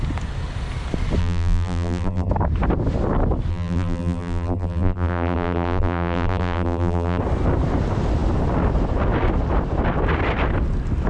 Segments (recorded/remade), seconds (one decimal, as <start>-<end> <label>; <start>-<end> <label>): 0.0-1.2 recorded; 1.2-2.3 remade; 2.3-3.5 recorded; 3.5-7.2 remade; 7.2-11.1 recorded